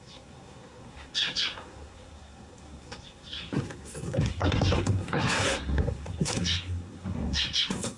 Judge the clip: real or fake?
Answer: fake